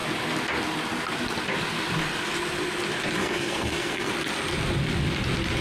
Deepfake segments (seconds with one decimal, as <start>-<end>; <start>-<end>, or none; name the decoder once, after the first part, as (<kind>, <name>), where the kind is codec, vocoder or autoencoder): 3.2-4.1 (codec, SNAC)